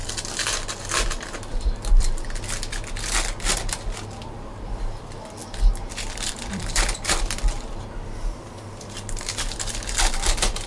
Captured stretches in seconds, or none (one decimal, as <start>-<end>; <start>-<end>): 0.0-4.2; 5.4-6.3